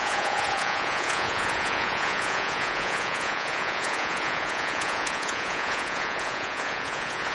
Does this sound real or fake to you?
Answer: fake